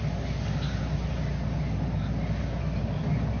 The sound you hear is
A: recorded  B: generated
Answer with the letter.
A